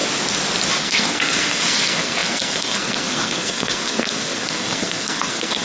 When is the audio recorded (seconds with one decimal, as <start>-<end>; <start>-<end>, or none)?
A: 0.0-0.8